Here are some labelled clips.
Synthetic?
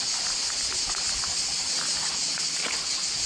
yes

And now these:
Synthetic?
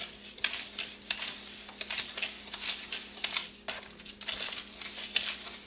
no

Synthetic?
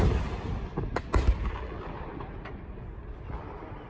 no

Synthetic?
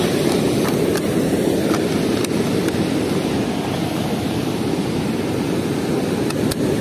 no